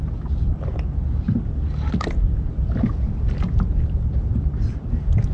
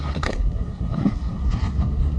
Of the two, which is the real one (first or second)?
first